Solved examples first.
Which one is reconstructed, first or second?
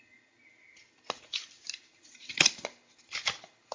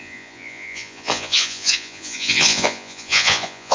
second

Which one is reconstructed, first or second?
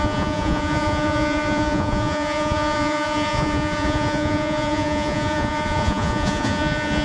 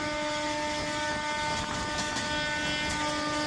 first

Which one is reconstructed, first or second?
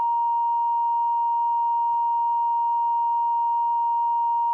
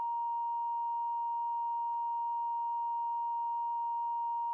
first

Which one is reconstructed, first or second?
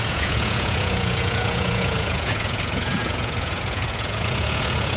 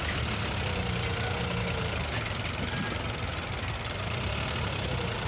first